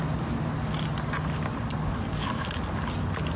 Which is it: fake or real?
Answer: real